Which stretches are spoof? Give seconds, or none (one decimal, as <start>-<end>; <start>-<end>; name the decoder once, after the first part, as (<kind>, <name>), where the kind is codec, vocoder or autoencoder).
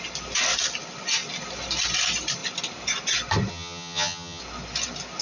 3.5-4.4 (vocoder, HiFi-GAN)